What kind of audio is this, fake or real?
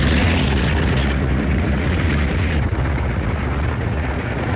fake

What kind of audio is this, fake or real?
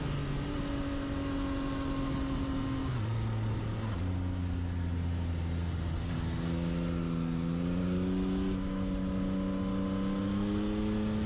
real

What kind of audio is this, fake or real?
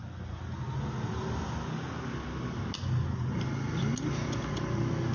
real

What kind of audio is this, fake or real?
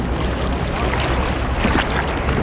real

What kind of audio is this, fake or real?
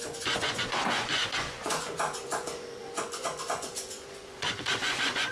fake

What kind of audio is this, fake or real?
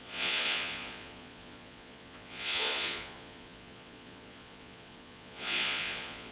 fake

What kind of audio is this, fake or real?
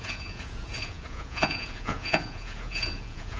fake